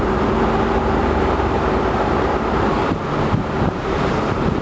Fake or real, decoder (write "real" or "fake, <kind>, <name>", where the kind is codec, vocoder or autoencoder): fake, vocoder, BigVGAN v2